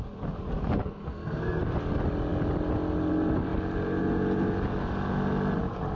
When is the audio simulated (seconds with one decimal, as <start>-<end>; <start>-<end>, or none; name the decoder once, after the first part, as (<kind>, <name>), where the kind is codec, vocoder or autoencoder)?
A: 0.8-1.6 (codec, SNAC)